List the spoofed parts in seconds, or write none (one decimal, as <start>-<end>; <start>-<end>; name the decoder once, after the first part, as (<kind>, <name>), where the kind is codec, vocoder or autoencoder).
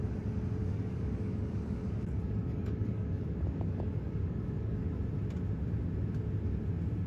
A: 0.6-4.9 (codec, DAC)